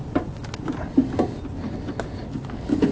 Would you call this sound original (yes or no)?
yes